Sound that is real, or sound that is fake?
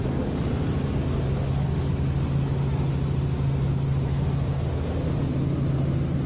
real